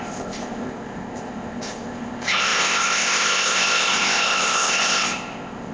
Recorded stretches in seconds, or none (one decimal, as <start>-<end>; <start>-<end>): none